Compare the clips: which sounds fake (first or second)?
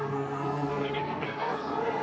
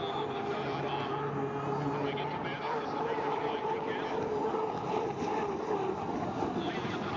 first